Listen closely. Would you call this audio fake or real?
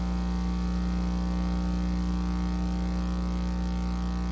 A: real